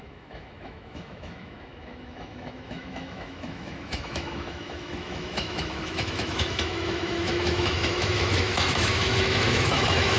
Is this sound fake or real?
fake